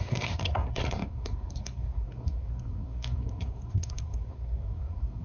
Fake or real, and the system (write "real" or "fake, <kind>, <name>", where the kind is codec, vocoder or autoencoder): fake, codec, SNAC